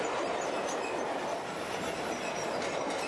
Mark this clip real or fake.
real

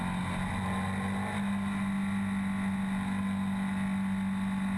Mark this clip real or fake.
real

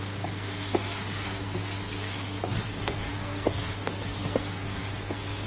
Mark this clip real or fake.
fake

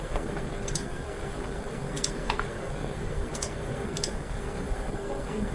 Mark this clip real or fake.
fake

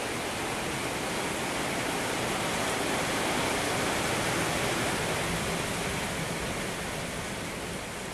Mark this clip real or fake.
real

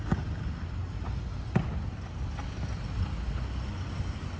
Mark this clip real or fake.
real